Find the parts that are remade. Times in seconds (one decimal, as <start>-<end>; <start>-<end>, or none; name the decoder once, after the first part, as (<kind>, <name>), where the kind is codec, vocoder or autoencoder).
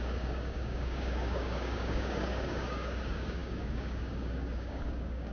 0.0-5.3 (codec, DAC)